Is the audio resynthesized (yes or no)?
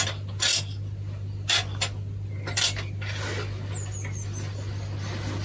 no